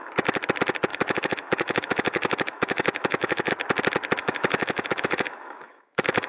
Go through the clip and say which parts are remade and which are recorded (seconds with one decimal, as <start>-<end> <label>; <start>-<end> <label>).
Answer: 0.0-0.9 recorded; 0.9-3.5 remade; 3.5-4.2 recorded; 4.2-6.3 remade